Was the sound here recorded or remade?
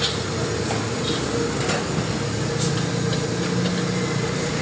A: recorded